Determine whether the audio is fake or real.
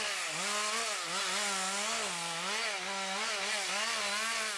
real